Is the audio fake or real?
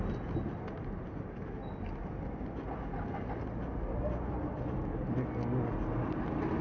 real